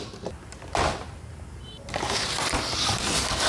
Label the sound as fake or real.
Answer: real